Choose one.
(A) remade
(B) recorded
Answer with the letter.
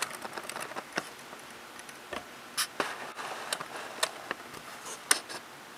B